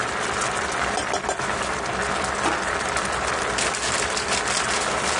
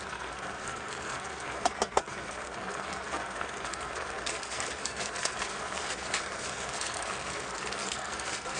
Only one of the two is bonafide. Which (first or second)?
first